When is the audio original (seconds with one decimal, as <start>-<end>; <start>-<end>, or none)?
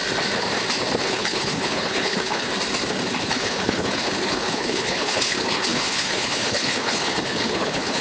0.0-1.0; 2.5-3.2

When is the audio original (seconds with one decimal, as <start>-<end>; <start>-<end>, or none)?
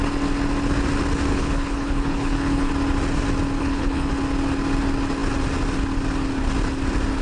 0.0-1.3; 2.7-3.6; 4.1-7.2